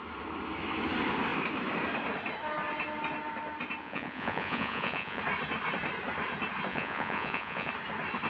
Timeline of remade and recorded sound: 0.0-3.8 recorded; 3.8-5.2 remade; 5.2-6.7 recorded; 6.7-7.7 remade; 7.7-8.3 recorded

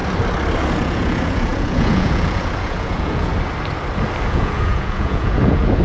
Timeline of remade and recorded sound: 0.0-0.8 recorded; 0.8-3.3 remade; 3.3-4.3 recorded; 4.3-5.8 remade